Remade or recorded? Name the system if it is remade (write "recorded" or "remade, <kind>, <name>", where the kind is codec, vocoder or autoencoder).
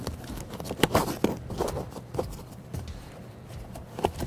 remade, vocoder, BigVGAN v2